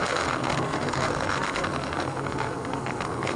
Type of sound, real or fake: fake